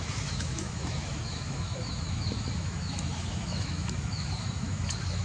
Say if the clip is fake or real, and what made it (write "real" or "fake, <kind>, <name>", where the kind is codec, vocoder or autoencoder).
fake, autoencoder, DAC-VAE